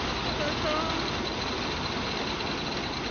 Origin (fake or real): real